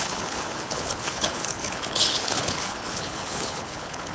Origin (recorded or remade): remade